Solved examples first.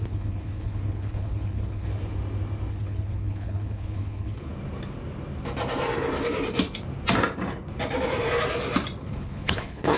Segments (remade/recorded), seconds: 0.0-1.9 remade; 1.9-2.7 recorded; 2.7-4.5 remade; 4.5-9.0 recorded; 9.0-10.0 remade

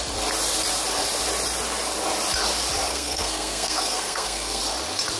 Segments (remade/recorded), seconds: 0.0-2.9 recorded; 2.9-4.6 remade; 4.6-5.2 recorded

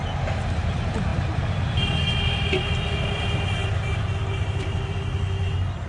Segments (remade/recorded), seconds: 0.0-5.9 recorded

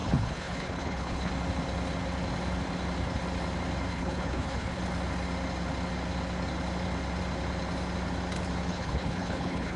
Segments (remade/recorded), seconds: 0.0-1.3 remade; 1.3-3.9 recorded; 3.9-4.8 remade; 4.8-8.7 recorded; 8.7-9.8 remade

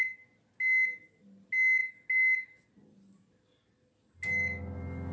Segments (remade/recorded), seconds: 0.0-5.1 recorded

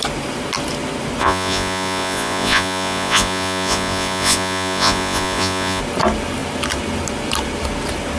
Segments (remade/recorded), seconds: 0.0-1.2 recorded; 1.2-5.8 remade; 5.8-8.2 recorded

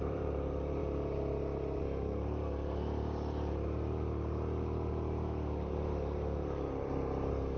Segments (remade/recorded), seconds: 0.0-7.6 remade

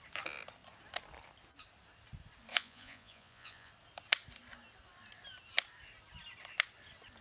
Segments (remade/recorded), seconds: 0.0-2.5 recorded; 2.5-3.7 remade; 3.7-7.2 recorded